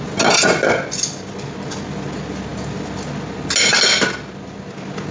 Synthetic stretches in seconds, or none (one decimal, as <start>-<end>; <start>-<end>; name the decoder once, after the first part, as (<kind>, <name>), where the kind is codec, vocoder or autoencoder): none